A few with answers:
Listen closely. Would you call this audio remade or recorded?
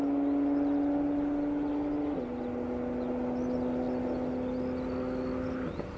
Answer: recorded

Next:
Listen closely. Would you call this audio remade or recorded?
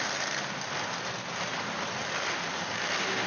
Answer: recorded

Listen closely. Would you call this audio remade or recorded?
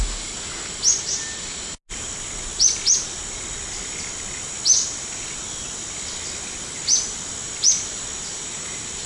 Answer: recorded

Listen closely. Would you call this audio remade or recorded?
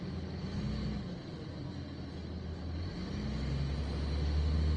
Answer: recorded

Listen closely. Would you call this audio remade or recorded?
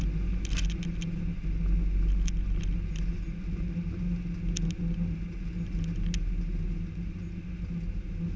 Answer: recorded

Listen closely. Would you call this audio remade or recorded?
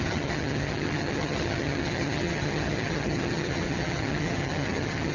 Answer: remade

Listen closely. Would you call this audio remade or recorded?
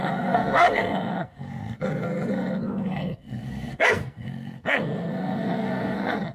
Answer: remade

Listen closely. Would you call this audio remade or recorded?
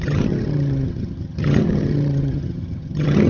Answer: remade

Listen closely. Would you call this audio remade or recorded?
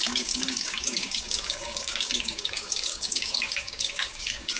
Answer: remade